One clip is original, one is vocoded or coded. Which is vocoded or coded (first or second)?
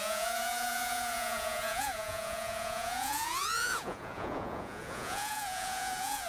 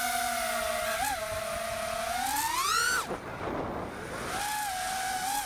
first